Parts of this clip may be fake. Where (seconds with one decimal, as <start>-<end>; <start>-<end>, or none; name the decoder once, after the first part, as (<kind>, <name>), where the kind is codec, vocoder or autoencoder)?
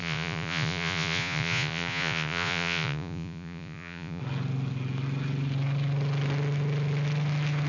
0.0-4.2 (vocoder, Vocos)